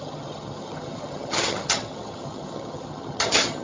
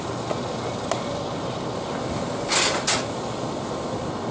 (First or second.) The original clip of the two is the second